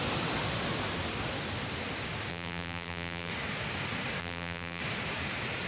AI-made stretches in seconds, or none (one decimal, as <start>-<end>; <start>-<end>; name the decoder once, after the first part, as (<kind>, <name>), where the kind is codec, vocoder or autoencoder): 2.3-3.3 (vocoder, BigVGAN v2); 4.2-4.8